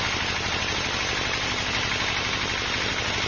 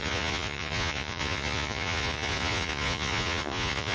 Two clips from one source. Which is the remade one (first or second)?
second